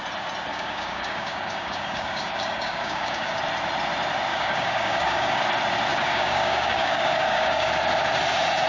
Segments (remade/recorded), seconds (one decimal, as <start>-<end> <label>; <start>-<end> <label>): 0.0-0.5 recorded; 0.5-3.4 remade; 3.4-4.3 recorded; 4.3-5.4 remade; 5.4-5.9 recorded; 5.9-7.7 remade; 7.7-8.7 recorded